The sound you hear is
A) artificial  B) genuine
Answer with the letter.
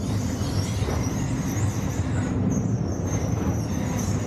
B